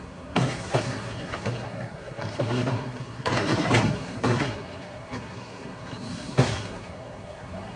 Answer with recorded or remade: remade